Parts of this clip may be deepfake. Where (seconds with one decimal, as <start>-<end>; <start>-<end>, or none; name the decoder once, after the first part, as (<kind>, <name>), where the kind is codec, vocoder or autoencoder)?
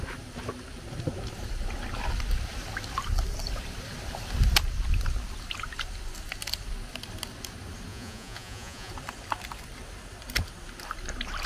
7.9-8.9 (vocoder, Vocos)